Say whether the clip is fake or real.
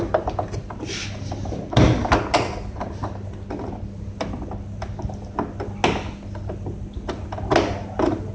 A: real